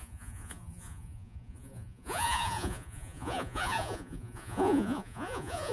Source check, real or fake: fake